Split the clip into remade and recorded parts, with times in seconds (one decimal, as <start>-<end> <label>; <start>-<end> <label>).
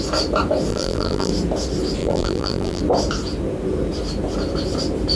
0.0-0.7 recorded; 0.7-1.3 remade; 1.3-2.0 recorded; 2.0-2.8 remade; 2.8-5.2 recorded